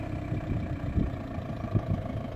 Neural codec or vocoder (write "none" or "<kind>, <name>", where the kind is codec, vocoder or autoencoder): vocoder, BigVGAN v2